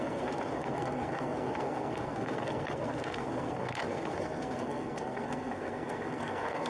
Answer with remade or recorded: remade